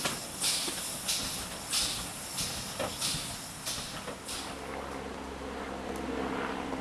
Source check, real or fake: real